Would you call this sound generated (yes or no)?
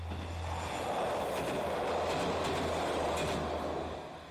no